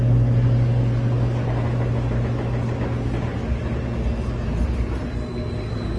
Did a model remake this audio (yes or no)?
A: no